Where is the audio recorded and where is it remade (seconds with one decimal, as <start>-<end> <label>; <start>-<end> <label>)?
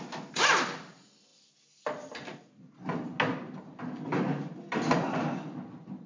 0.0-6.1 recorded